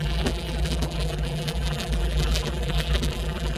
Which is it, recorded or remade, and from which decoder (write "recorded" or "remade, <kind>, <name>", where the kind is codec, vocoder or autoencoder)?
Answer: remade, vocoder, BigVGAN v2